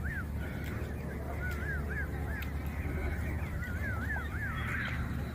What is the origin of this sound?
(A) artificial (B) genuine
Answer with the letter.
B